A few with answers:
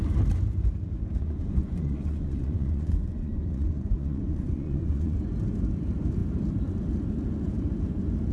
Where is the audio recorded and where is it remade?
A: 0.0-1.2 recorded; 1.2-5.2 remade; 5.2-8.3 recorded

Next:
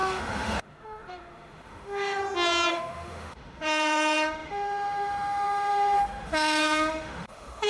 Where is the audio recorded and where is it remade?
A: 0.0-2.2 remade; 2.2-2.7 recorded; 2.7-7.7 remade

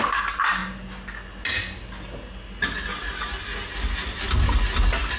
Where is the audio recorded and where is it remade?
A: 0.0-5.2 recorded

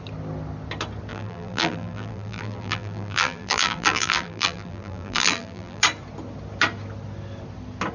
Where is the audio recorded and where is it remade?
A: 0.0-1.1 recorded; 1.1-5.8 remade; 5.8-7.9 recorded

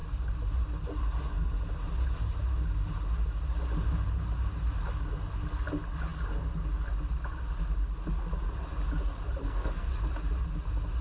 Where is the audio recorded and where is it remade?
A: 0.0-9.4 recorded; 9.4-9.9 remade; 9.9-11.0 recorded

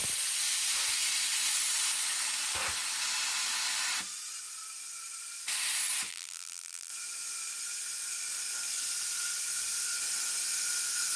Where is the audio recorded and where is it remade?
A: 0.0-6.1 recorded; 6.1-6.9 remade; 6.9-11.2 recorded

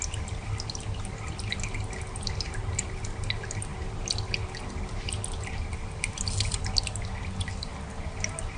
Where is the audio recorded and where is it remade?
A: 0.0-8.6 recorded

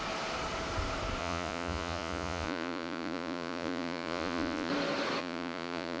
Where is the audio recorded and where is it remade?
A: 0.0-1.2 recorded; 1.2-4.7 remade; 4.7-5.2 recorded; 5.2-6.0 remade